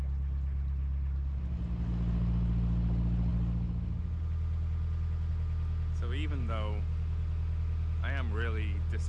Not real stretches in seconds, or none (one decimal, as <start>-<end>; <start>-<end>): none